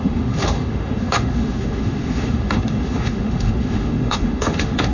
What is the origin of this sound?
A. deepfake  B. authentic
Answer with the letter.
A